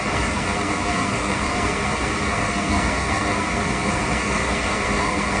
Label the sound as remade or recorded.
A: remade